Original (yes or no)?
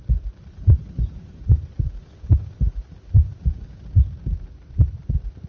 yes